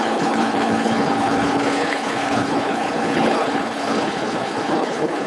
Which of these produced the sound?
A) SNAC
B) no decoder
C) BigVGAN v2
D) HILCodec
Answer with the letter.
D